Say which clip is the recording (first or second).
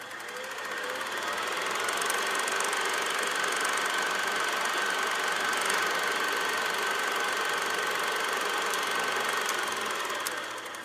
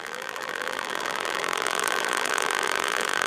first